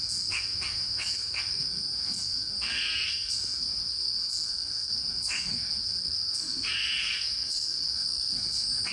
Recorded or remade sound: remade